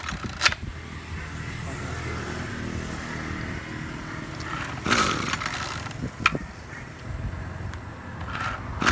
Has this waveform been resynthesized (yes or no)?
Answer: no